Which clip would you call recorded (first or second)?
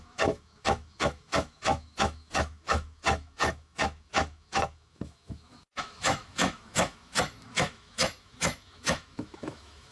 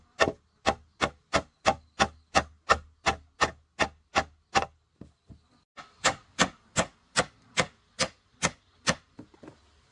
second